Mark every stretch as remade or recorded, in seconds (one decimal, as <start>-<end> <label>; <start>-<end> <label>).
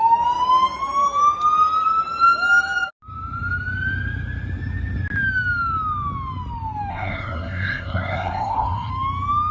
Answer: 0.0-6.9 recorded; 6.9-8.9 remade; 8.9-9.5 recorded